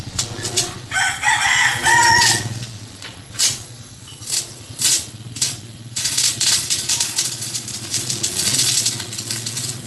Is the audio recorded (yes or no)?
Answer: no